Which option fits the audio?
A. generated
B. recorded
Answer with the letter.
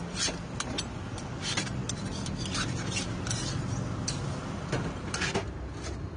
B